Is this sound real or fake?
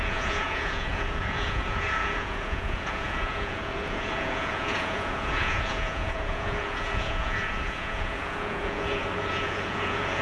fake